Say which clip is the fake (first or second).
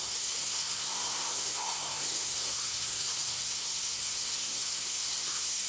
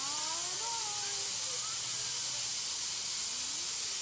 first